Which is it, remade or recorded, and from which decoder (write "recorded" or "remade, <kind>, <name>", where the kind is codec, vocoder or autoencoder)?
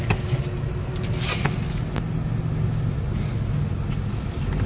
recorded